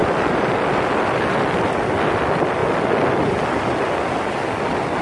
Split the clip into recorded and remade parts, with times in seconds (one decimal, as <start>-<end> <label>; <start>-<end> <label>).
0.0-2.2 remade; 2.2-5.0 recorded